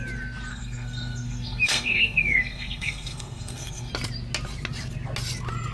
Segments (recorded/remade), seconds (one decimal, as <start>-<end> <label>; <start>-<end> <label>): 0.0-0.5 recorded; 0.5-3.9 remade; 3.9-5.7 recorded